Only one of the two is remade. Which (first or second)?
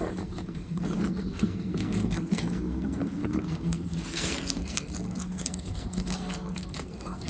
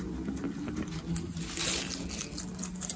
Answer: first